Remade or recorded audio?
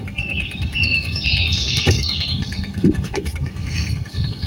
remade